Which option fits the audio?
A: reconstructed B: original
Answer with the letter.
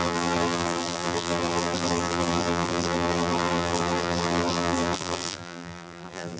A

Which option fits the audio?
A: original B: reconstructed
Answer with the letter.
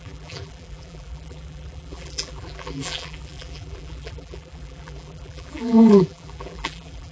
B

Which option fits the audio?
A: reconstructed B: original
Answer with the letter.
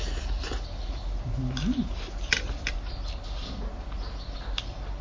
B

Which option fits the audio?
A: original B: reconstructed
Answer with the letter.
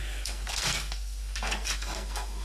B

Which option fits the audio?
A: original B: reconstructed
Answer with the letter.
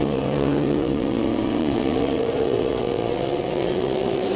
B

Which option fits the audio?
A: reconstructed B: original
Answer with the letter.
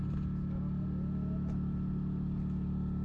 B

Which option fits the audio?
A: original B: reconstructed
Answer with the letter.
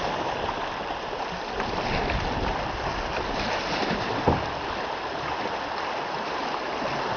A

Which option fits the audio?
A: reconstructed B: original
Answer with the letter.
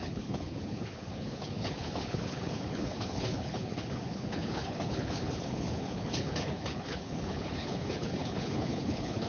A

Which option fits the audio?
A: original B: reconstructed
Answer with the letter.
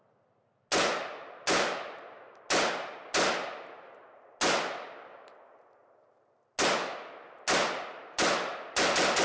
A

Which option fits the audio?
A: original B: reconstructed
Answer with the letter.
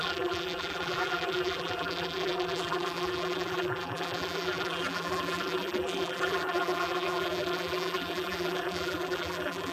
B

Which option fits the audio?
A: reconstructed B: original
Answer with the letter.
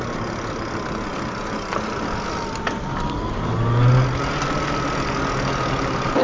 B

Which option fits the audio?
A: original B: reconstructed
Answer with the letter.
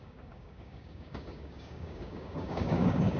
B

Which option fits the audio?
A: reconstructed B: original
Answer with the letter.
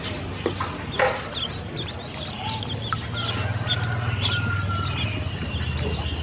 B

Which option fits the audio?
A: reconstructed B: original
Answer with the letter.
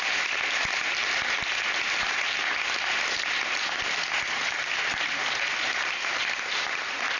B